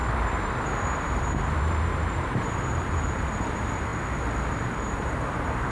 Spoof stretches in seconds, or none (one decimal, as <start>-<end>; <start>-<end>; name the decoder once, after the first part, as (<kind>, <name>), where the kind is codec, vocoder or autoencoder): 0.0-3.9 (vocoder, BigVGAN v2); 4.5-5.7